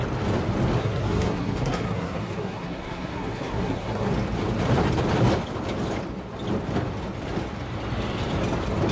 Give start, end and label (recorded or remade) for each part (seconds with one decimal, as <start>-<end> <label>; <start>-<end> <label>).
0.0-0.8 recorded; 0.8-4.1 remade; 4.1-8.9 recorded